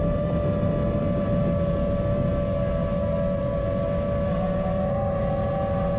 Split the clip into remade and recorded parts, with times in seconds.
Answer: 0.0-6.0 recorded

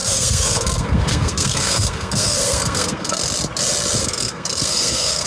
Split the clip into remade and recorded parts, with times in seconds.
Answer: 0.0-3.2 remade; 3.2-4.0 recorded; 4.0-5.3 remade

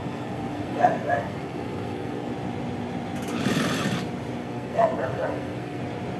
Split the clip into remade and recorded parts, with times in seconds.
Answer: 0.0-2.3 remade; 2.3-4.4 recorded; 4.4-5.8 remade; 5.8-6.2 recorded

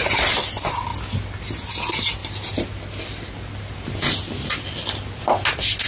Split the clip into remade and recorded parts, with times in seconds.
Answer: 0.0-5.9 recorded

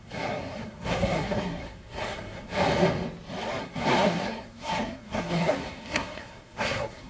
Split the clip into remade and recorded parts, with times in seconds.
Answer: 0.0-2.7 remade; 2.7-3.6 recorded; 3.6-7.1 remade

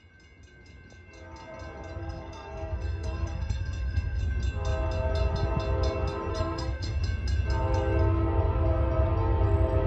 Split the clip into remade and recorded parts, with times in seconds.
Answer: 0.0-2.0 recorded; 2.0-4.2 remade; 4.2-6.3 recorded; 6.3-7.0 remade; 7.0-9.9 recorded